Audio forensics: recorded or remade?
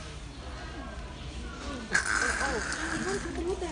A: recorded